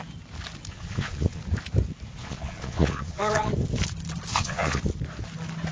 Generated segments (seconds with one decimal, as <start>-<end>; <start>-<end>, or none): 0.7-1.4; 2.2-3.5; 4.3-4.8